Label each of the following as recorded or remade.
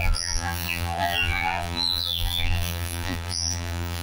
remade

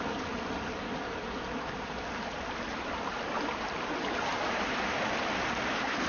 recorded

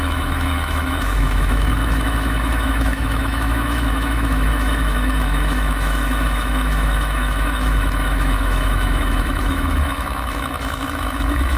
remade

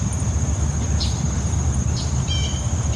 recorded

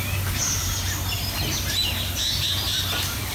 recorded